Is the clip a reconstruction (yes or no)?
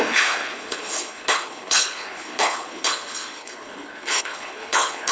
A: yes